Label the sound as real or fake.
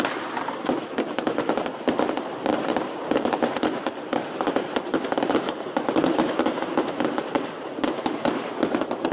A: fake